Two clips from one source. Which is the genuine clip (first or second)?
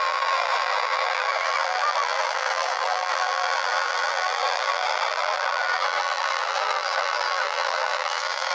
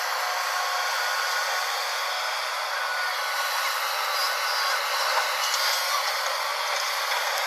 second